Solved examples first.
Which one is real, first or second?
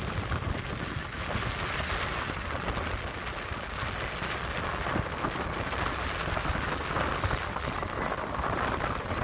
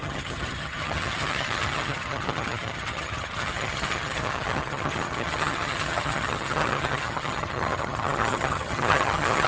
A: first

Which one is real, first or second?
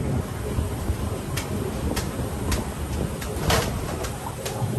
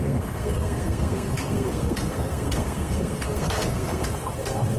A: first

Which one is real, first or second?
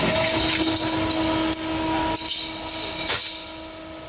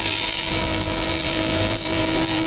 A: first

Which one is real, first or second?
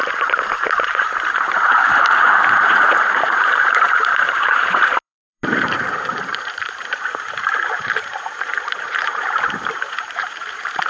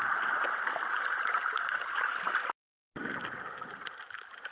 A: second